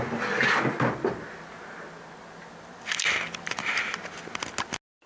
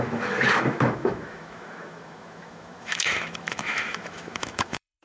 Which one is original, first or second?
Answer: first